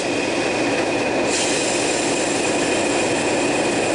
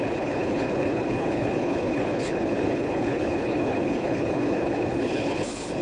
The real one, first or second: first